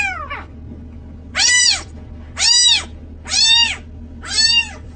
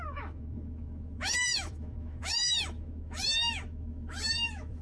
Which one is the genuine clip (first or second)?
first